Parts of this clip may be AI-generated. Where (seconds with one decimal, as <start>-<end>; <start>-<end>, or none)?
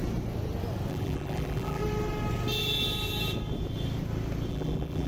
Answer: 0.9-1.8; 4.5-5.1